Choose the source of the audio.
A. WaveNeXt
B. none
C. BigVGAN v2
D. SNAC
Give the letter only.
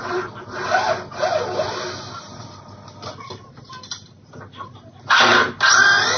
B